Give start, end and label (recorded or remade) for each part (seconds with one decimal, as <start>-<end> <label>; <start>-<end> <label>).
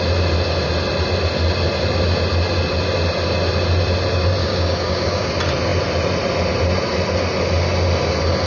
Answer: 0.0-4.4 recorded; 4.4-5.3 remade; 5.3-8.5 recorded